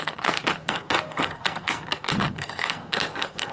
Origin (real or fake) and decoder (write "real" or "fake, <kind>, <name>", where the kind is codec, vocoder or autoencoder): fake, codec, SNAC